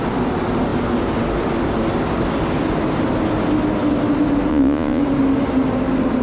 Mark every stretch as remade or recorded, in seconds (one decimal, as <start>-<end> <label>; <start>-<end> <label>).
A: 0.0-4.5 recorded; 4.5-5.0 remade; 5.0-6.2 recorded